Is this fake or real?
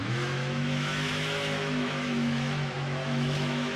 fake